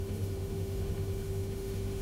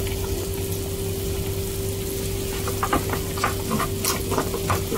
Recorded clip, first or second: second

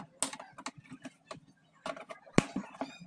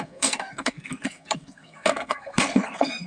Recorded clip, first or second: first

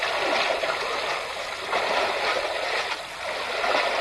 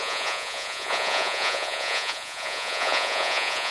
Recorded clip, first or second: first